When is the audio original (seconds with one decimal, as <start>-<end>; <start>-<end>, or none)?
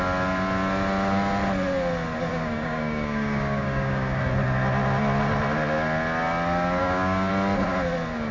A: 0.0-2.3; 4.2-6.8; 7.3-8.3